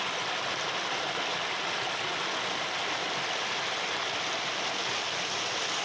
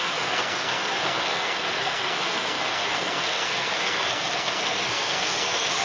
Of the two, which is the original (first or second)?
first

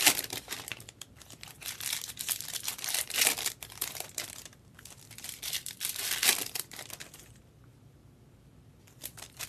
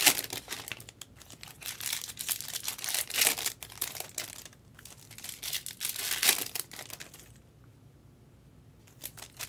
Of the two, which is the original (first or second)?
second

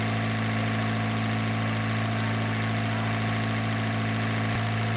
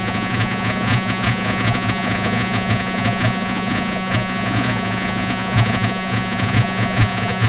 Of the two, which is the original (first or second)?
first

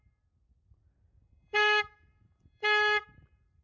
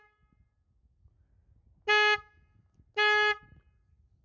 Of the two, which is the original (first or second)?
second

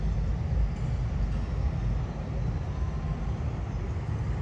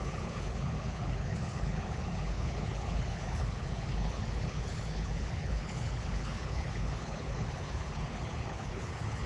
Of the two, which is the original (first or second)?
first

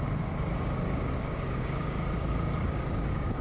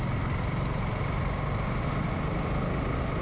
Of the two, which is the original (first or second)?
second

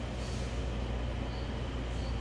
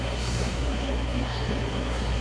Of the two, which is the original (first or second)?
first